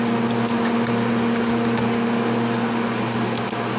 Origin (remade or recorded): recorded